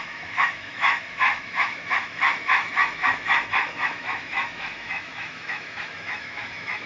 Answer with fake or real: fake